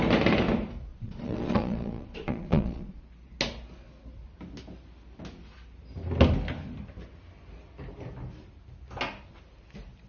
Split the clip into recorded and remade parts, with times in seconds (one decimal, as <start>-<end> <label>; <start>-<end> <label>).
0.0-0.9 recorded; 0.9-3.0 remade; 3.0-10.1 recorded